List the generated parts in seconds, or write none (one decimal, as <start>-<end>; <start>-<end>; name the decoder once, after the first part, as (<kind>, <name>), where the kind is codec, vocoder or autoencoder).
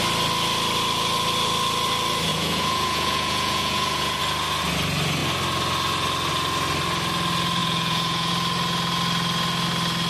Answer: 2.3-4.2 (vocoder, Vocos); 7.6-8.3